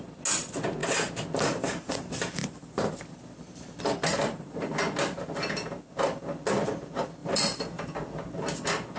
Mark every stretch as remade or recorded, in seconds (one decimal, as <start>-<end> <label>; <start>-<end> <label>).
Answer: 0.0-2.4 recorded; 2.4-3.0 remade; 3.0-4.1 recorded; 4.1-4.8 remade; 4.8-7.2 recorded; 7.2-7.8 remade; 7.8-9.0 recorded